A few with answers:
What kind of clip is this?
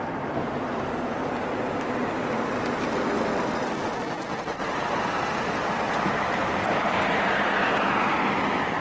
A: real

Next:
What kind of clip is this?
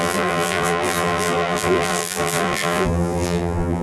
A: fake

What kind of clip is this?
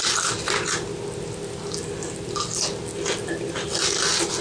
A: real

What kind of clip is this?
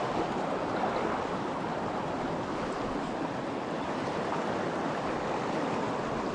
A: real